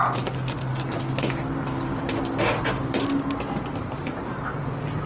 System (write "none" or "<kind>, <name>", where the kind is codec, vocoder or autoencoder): none